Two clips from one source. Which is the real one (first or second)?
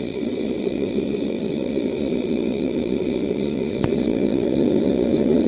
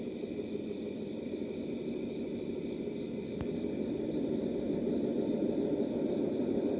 second